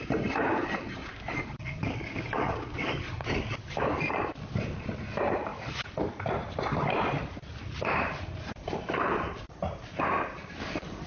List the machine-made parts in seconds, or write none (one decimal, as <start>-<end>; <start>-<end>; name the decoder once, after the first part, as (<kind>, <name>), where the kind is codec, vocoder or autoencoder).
1.1-4.0 (codec, DAC); 5.5-6.1; 10.6-11.1